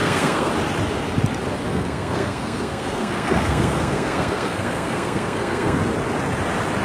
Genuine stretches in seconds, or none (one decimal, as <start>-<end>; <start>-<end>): 0.5-1.7; 5.8-6.8